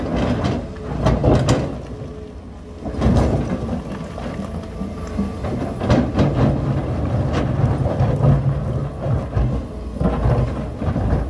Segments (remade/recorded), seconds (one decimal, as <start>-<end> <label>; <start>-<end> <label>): 0.0-11.3 recorded